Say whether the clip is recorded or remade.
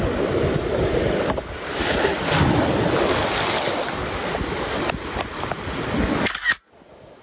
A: recorded